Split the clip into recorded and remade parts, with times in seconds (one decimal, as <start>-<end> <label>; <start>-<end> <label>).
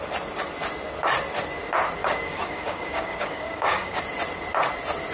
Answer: 0.0-2.0 recorded; 2.0-4.0 remade; 4.0-5.1 recorded